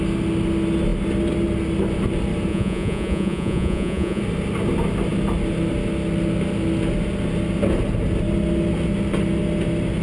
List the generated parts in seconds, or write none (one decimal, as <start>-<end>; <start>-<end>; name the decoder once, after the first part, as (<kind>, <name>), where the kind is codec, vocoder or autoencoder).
2.5-4.2 (vocoder, Vocos)